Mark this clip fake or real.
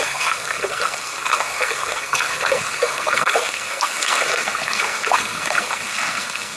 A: fake